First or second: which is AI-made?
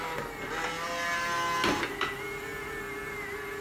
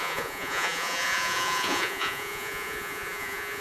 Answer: second